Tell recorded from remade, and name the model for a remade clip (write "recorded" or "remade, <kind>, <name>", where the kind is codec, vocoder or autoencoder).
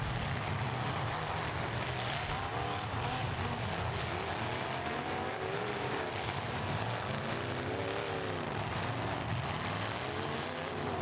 recorded